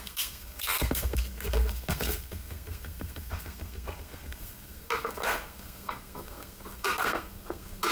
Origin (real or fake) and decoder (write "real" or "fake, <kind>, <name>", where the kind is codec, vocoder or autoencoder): fake, codec, SNAC